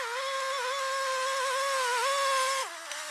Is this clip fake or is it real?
real